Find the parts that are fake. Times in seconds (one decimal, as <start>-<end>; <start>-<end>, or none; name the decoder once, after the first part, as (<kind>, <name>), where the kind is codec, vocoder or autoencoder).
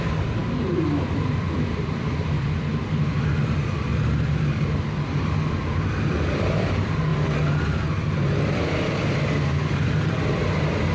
0.0-0.4 (vocoder, BigVGAN v2); 1.2-3.9; 5.7-7.1; 8.5-10.9